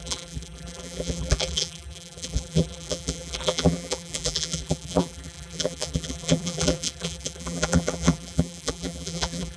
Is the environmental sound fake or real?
fake